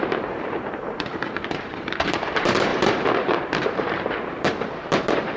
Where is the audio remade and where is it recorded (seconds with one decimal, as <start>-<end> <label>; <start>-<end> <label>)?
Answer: 0.0-5.4 remade